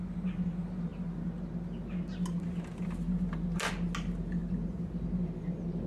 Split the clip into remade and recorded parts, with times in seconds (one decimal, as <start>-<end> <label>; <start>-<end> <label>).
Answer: 0.0-5.9 recorded